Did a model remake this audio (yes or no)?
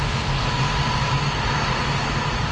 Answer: no